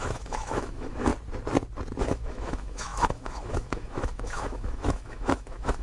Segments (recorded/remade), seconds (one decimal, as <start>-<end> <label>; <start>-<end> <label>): 0.0-1.1 remade; 1.1-2.0 recorded; 2.0-5.8 remade